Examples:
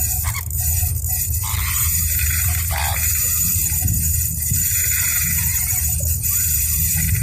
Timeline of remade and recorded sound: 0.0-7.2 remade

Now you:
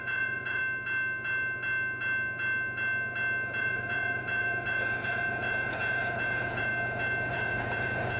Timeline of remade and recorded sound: 0.0-0.6 remade; 0.6-3.6 recorded; 3.6-6.7 remade; 6.7-7.3 recorded; 7.3-8.2 remade

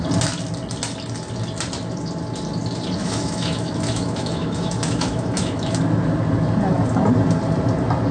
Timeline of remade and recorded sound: 0.0-3.0 recorded; 3.0-5.8 remade; 5.8-8.1 recorded

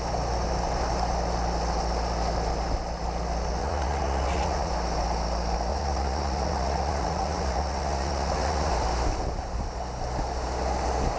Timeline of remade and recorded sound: 0.0-3.6 recorded; 3.6-4.7 remade; 4.7-5.7 recorded; 5.7-8.7 remade; 8.7-11.2 recorded

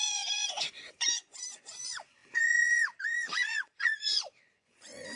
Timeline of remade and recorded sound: 0.0-5.2 remade

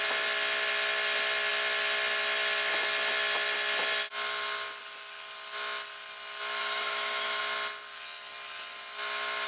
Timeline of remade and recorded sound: 0.0-6.6 recorded; 6.6-7.4 remade; 7.4-9.5 recorded

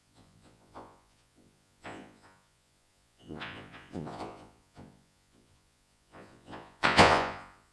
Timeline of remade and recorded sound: 0.0-7.7 remade